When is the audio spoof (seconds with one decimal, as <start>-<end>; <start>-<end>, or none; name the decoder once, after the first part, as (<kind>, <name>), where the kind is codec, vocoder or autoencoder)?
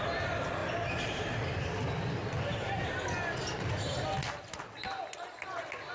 none